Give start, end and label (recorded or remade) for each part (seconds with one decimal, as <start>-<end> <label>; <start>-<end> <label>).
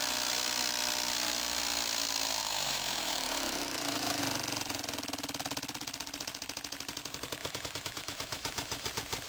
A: 0.0-2.4 recorded; 2.4-4.2 remade; 4.2-7.4 recorded; 7.4-8.9 remade; 8.9-9.3 recorded